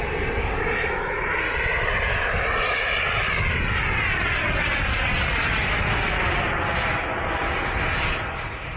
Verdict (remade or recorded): recorded